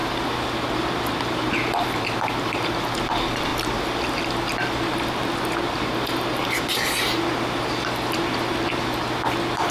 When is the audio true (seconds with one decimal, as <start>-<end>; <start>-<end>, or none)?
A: 0.0-9.7